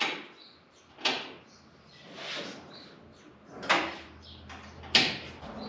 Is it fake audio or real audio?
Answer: real